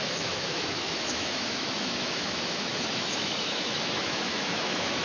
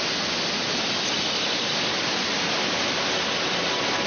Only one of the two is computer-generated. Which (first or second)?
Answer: first